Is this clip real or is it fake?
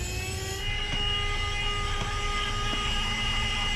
real